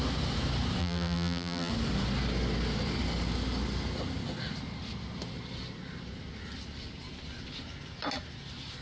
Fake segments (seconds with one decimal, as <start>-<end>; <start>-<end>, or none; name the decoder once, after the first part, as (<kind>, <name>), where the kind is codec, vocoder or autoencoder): 0.8-1.7 (vocoder, BigVGAN v2)